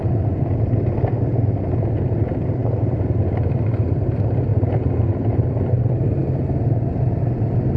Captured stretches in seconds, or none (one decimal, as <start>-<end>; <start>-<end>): 4.5-5.1; 6.2-6.9